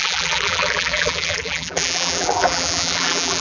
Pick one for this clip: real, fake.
fake